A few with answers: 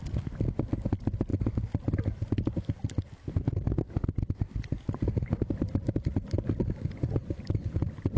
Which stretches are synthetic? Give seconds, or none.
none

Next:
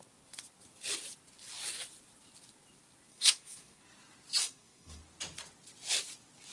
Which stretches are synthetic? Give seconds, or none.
3.1-3.8 (codec, SNAC); 4.4-5.0

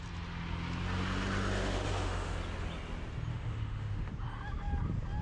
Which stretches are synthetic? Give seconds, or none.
1.6-2.4 (autoencoder, DAC-VAE); 3.3-4.1

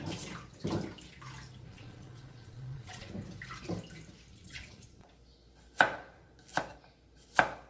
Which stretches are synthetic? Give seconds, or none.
1.7-3.1 (vocoder, Vocos); 4.3-5.1

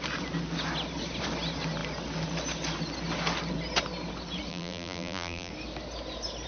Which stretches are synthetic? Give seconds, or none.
4.5-5.5 (vocoder, BigVGAN v2)